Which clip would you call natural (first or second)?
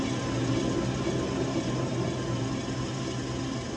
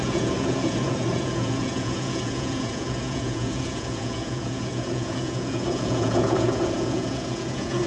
first